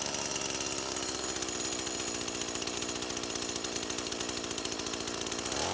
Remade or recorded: recorded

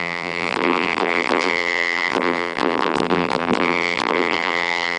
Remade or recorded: remade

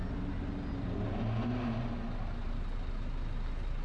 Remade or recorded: recorded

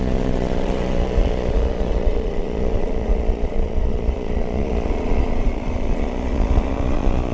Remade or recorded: remade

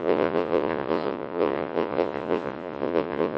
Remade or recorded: remade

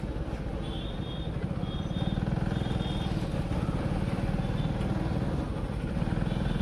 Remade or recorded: recorded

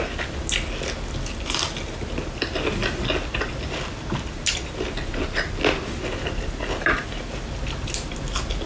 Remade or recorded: recorded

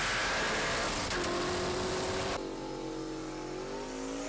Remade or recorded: recorded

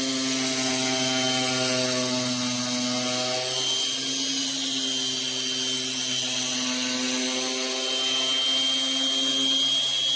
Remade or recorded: recorded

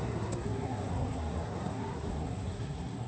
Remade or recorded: remade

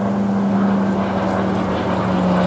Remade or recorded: recorded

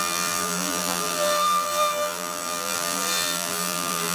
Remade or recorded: remade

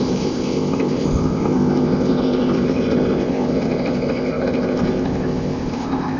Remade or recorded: remade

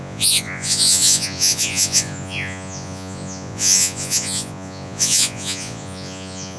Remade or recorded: remade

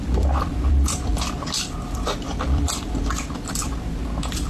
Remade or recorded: remade